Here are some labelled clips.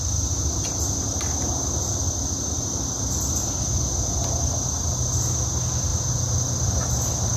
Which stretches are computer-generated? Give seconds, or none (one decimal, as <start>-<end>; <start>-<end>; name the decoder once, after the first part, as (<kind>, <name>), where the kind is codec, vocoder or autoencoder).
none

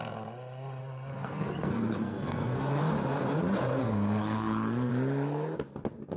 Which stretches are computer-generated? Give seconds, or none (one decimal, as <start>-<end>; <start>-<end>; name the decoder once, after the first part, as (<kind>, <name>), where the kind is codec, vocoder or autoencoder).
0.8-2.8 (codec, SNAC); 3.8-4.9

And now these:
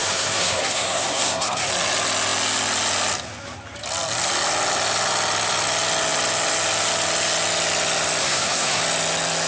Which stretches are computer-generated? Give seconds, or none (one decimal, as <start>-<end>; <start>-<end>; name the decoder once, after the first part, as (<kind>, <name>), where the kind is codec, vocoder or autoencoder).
0.0-1.7 (codec, SNAC); 8.2-8.8

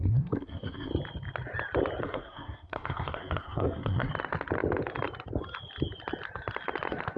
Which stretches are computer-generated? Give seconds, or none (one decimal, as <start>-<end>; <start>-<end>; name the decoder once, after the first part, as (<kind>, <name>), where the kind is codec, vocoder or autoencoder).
0.0-0.9 (codec, SNAC); 2.0-4.1

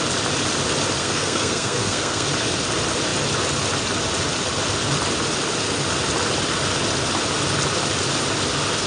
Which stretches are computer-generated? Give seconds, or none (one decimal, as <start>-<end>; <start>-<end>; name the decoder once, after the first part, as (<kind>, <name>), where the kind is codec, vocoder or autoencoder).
1.0-2.3 (codec, SNAC)

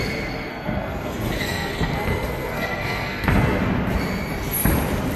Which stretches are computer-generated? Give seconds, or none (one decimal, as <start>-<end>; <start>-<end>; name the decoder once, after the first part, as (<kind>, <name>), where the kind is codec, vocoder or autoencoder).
0.5-3.6 (codec, SNAC)

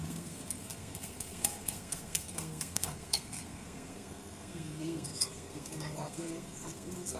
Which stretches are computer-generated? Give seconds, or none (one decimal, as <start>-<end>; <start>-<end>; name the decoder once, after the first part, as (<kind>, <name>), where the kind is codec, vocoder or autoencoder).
0.0-7.2 (codec, SNAC)